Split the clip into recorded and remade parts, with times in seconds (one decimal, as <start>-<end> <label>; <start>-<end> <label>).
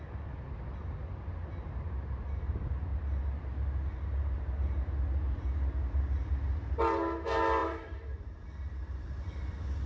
0.0-7.6 recorded; 7.6-9.4 remade; 9.4-9.9 recorded